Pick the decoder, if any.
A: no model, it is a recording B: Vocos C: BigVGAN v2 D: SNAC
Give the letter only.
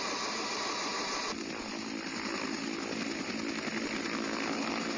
C